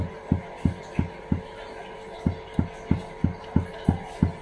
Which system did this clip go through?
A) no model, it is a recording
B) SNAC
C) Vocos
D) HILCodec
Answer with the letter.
A